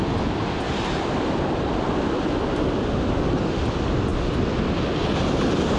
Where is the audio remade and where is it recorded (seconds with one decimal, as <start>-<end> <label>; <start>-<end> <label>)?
0.0-5.8 recorded